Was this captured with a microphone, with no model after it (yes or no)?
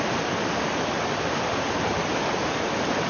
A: yes